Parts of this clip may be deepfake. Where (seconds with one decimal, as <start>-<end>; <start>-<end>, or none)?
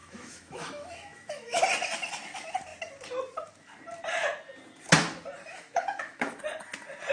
0.0-1.6; 5.5-6.4